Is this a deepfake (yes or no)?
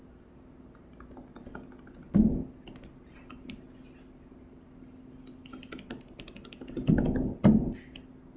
no